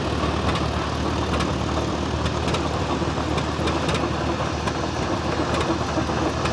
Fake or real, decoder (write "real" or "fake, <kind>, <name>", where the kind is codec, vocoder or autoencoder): real